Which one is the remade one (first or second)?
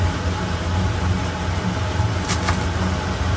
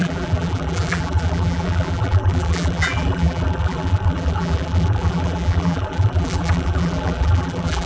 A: second